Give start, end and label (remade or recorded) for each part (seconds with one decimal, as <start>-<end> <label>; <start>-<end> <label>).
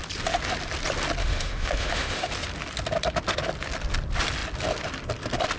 0.0-1.2 recorded; 1.2-2.3 remade; 2.3-5.6 recorded